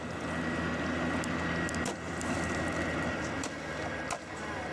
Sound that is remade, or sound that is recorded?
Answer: recorded